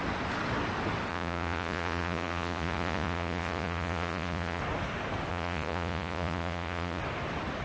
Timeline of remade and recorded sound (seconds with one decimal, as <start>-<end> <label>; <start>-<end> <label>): 0.0-1.1 recorded; 1.1-4.6 remade; 4.6-5.3 recorded; 5.3-7.0 remade; 7.0-7.6 recorded

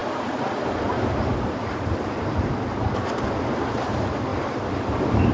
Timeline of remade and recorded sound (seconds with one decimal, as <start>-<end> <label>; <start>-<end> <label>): 0.0-3.2 remade; 3.2-4.3 recorded; 4.3-5.3 remade